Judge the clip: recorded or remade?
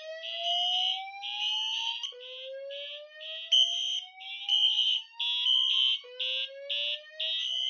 recorded